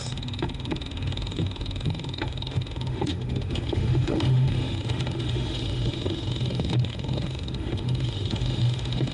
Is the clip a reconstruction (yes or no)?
yes